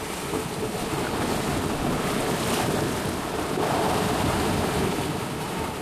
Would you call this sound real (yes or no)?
no